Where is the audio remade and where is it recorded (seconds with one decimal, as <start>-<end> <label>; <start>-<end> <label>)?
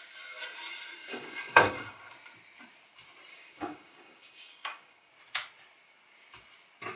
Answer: 0.0-1.0 recorded; 1.0-2.0 remade; 2.0-3.3 recorded; 3.3-5.1 remade; 5.1-7.0 recorded